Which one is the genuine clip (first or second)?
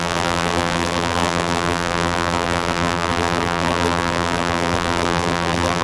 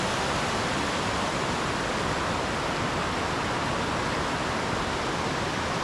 second